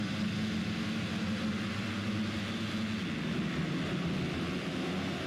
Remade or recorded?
recorded